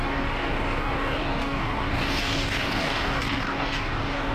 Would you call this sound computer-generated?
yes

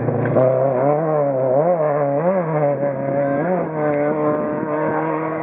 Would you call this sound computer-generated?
no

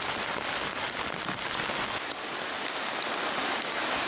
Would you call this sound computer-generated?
no